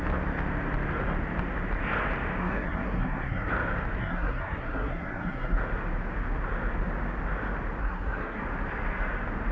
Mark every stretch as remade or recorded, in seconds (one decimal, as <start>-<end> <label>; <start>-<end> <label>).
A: 0.0-2.4 recorded; 2.4-3.5 remade; 3.5-4.0 recorded; 4.0-5.6 remade; 5.6-7.8 recorded; 7.8-8.4 remade; 8.4-9.5 recorded